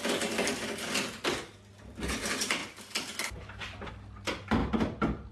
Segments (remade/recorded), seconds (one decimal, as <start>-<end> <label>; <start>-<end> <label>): 0.0-2.6 recorded; 2.6-3.9 remade; 3.9-5.3 recorded